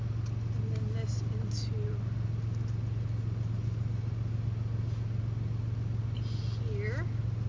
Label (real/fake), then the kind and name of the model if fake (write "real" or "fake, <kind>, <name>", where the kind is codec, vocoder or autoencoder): real